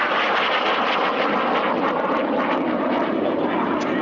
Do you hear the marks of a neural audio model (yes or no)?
no